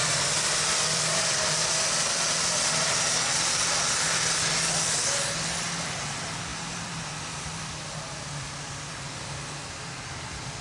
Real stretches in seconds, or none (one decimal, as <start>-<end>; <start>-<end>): 1.7-6.5; 8.9-10.6